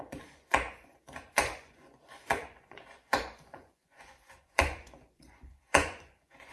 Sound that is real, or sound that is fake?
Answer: fake